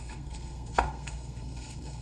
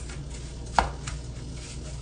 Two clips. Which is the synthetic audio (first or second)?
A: first